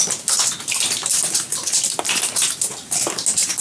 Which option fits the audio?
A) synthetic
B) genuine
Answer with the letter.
B